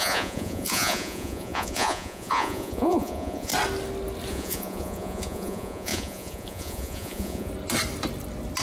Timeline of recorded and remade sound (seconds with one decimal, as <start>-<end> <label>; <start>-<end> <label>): 0.0-3.5 remade; 3.5-4.3 recorded; 4.3-7.5 remade; 7.5-8.6 recorded